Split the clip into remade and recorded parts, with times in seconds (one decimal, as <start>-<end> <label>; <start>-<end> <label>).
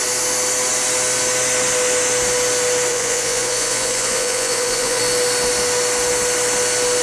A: 0.0-2.9 recorded; 2.9-5.0 remade; 5.0-7.0 recorded